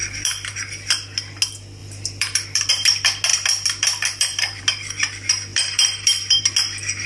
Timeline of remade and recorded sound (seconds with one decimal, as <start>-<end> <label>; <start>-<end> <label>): 0.0-0.5 remade; 0.5-1.8 recorded; 1.8-2.7 remade; 2.7-3.3 recorded; 3.3-4.6 remade; 4.6-5.5 recorded; 5.5-6.4 remade; 6.4-7.1 recorded